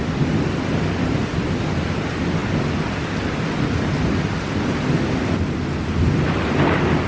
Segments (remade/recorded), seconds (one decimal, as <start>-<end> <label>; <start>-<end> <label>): 0.0-7.1 recorded